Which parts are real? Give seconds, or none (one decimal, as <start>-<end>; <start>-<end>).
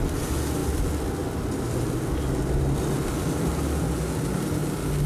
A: 0.0-5.1